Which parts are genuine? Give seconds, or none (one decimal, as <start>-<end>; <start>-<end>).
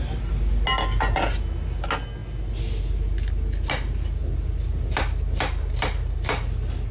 0.0-6.9